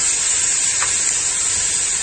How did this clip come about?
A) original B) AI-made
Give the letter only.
A